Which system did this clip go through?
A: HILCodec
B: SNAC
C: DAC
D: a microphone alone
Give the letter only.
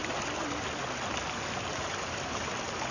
D